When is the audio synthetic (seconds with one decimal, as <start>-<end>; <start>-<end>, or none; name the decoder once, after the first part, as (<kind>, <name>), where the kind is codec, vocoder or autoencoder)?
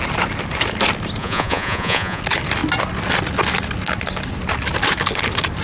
1.2-2.2 (vocoder, Vocos)